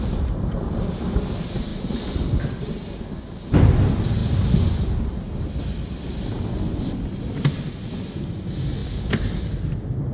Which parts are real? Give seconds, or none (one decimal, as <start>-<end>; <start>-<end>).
0.0-10.1